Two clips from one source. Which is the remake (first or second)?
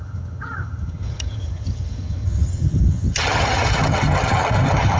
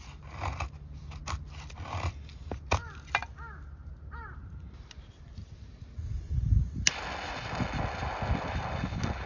first